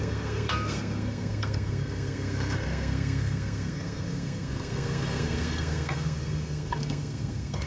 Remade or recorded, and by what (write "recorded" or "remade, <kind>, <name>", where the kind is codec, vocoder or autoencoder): remade, codec, SNAC